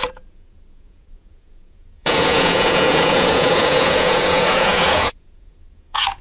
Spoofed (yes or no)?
yes